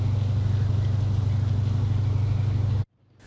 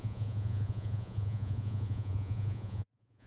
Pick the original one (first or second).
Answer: first